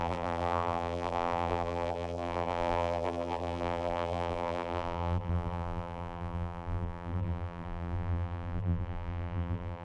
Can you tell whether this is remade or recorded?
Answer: remade